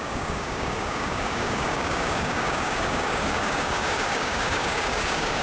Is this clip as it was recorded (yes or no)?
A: no